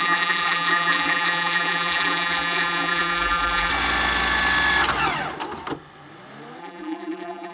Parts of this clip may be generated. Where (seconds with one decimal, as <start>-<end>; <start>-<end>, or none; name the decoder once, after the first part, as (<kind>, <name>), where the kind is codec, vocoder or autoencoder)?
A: 0.0-3.7 (vocoder, BigVGAN v2); 6.6-7.5